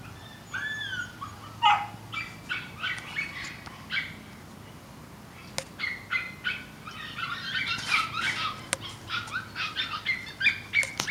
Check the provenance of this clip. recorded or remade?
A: recorded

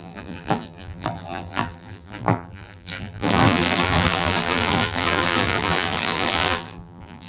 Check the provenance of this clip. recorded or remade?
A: remade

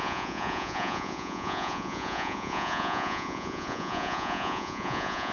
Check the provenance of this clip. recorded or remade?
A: remade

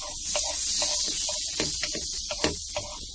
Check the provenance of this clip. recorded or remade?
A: recorded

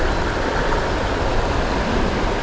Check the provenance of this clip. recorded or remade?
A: recorded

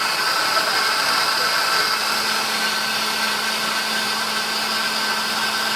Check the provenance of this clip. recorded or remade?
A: recorded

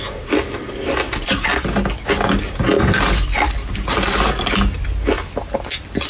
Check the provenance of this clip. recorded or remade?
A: recorded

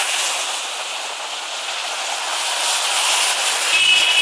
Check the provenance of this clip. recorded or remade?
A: recorded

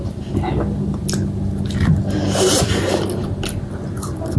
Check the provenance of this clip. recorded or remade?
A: recorded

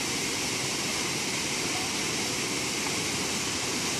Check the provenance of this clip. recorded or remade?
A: recorded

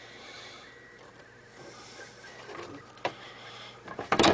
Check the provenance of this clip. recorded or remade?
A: remade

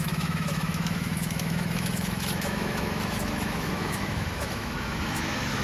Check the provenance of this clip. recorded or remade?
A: remade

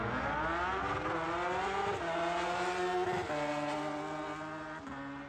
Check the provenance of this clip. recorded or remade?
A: recorded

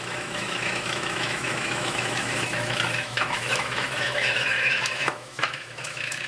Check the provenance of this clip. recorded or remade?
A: remade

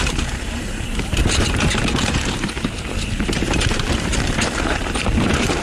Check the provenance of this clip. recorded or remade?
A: remade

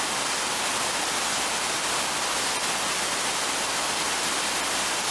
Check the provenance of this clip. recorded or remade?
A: recorded